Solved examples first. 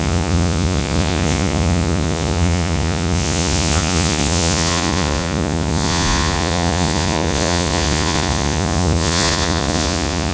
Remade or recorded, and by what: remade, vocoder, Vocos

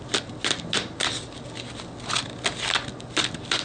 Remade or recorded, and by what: recorded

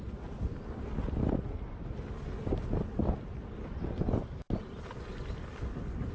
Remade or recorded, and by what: recorded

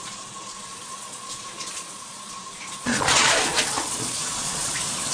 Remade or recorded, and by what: remade, vocoder, Vocos